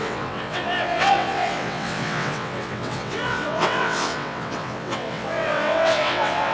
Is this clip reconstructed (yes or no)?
yes